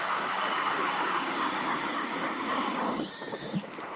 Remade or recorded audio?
remade